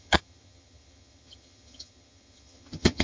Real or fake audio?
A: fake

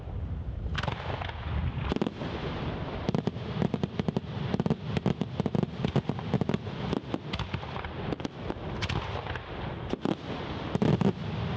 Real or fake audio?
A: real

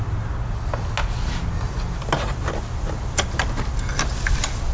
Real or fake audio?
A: real